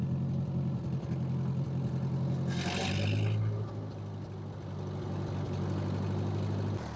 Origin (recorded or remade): recorded